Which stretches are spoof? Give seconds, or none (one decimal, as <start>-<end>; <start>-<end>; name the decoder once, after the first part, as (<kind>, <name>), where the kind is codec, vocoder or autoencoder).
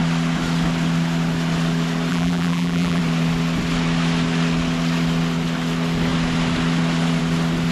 2.1-3.0 (vocoder, BigVGAN v2)